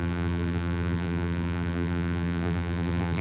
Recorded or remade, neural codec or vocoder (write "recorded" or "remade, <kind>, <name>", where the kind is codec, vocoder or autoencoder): remade, vocoder, BigVGAN v2